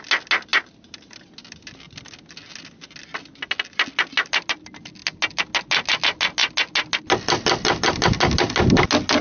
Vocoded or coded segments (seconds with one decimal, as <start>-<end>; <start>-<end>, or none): none